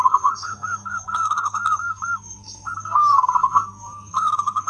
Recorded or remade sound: remade